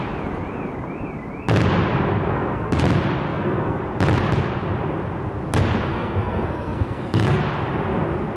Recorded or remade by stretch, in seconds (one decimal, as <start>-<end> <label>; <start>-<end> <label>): 0.0-2.3 recorded; 2.3-2.8 remade; 2.8-3.3 recorded; 3.3-3.8 remade; 3.8-5.9 recorded; 5.9-7.4 remade; 7.4-8.4 recorded